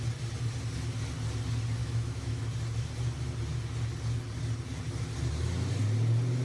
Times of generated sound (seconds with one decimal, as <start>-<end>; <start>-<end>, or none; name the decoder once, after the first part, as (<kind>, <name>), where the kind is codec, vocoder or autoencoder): 1.8-2.4 (autoencoder, DAC-VAE)

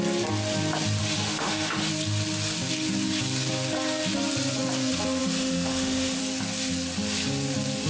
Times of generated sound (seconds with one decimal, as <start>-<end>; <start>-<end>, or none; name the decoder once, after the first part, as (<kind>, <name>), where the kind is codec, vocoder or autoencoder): 1.0-1.9 (autoencoder, DAC-VAE); 5.2-6.2

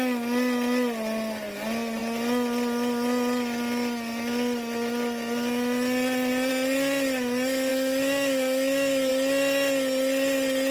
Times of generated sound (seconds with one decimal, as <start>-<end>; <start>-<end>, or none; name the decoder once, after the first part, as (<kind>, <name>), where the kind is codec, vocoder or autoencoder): 7.7-9.1 (autoencoder, DAC-VAE)

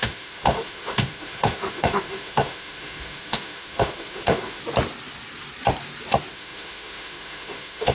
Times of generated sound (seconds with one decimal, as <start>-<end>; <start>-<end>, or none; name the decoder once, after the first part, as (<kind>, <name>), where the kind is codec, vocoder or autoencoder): 0.0-4.6 (autoencoder, DAC-VAE); 6.3-7.9

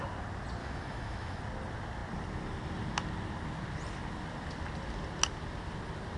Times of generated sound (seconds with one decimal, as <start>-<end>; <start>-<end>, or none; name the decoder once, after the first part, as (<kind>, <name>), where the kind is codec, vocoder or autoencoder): 0.6-1.4 (autoencoder, DAC-VAE)

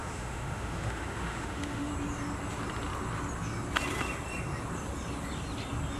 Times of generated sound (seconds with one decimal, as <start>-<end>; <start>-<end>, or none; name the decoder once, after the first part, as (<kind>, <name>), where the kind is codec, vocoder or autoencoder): 0.0-1.9 (autoencoder, DAC-VAE)

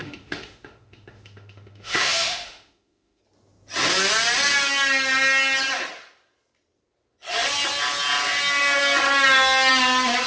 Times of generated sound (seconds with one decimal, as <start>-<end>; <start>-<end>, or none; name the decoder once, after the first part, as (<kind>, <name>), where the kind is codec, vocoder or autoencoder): 0.0-3.2 (autoencoder, DAC-VAE)

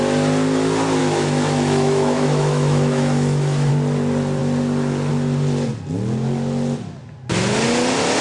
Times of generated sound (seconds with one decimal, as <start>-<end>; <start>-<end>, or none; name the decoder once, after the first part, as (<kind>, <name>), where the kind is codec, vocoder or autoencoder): 1.0-3.7 (autoencoder, DAC-VAE)